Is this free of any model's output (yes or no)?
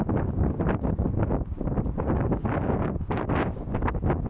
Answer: yes